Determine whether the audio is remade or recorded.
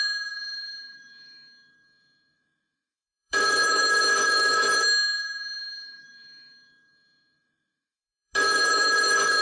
remade